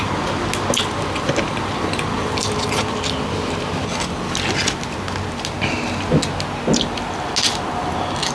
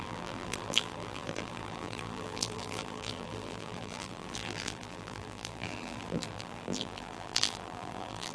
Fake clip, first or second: second